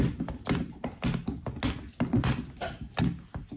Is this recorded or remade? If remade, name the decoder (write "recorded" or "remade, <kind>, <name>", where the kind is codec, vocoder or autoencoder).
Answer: recorded